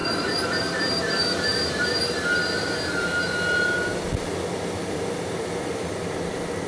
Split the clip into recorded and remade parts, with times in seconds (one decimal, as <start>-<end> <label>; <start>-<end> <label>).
0.0-1.9 remade; 1.9-6.7 recorded